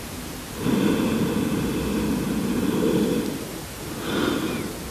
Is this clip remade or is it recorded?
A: recorded